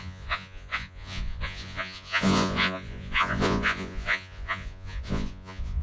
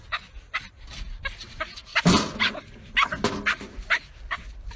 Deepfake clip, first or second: first